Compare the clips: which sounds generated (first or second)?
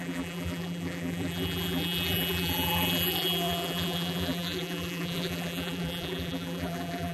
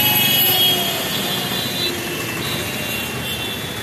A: first